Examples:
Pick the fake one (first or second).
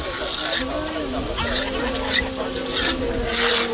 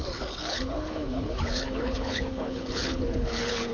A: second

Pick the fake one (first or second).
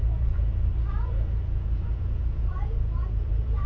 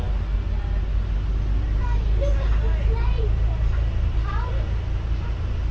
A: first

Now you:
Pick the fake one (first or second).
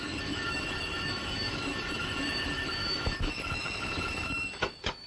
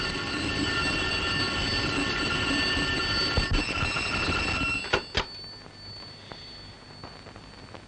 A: first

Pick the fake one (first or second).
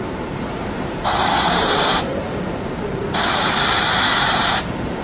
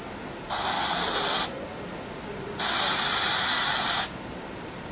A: first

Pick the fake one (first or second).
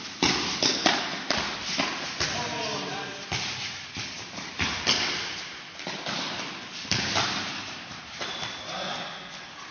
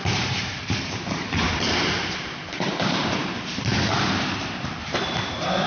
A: second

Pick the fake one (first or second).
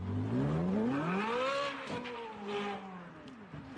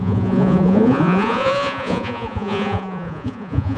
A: second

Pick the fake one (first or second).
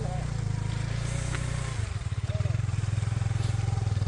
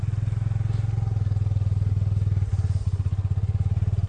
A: first